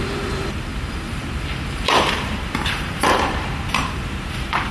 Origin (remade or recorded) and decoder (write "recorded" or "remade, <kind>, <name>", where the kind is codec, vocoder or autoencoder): remade, vocoder, BigVGAN v2